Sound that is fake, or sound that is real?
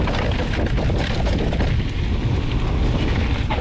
real